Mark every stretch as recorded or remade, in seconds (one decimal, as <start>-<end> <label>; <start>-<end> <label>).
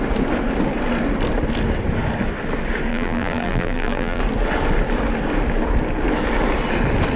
0.0-2.9 recorded; 2.9-4.2 remade; 4.2-7.2 recorded